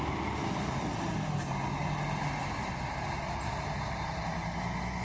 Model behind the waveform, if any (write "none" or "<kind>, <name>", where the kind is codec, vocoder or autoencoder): none